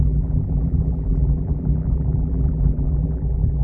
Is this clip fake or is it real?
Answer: fake